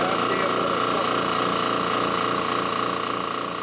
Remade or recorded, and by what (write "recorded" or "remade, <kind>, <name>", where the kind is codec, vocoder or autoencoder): recorded